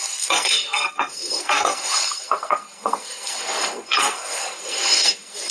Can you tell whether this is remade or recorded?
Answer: remade